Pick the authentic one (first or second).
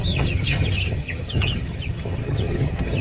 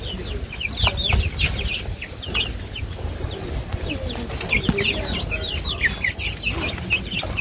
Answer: second